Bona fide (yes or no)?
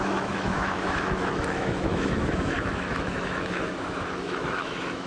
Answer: no